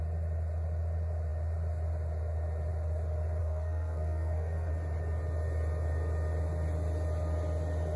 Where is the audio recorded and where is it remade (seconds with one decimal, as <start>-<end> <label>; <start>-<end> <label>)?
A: 0.0-3.4 recorded; 3.4-4.7 remade; 4.7-8.0 recorded